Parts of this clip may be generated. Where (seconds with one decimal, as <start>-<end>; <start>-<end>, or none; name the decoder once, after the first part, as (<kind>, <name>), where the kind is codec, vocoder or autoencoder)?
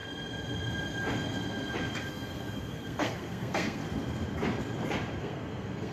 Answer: 2.1-3.8 (codec, SNAC); 5.2-5.9